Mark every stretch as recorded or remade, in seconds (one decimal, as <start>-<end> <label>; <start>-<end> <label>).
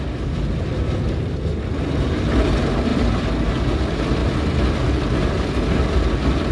0.0-6.5 recorded